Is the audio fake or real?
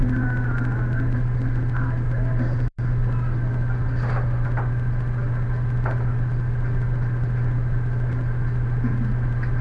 real